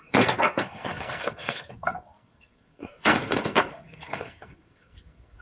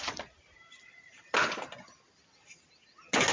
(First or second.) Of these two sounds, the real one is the second